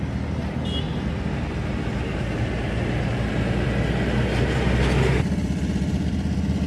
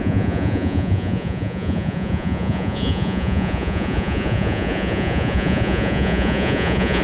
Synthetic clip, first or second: second